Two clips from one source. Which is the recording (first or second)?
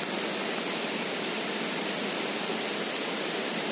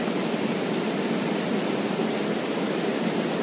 first